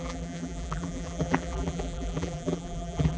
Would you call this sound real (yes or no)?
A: no